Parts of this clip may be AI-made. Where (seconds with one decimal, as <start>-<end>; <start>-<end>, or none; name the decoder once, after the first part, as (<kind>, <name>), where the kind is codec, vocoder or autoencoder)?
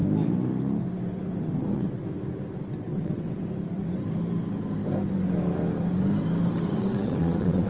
1.4-2.0 (vocoder, WaveNeXt); 2.6-3.4; 6.8-7.7